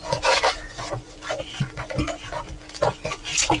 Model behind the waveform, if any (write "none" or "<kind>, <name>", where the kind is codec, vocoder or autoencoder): vocoder, Vocos